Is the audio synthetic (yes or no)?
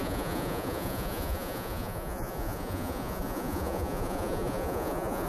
yes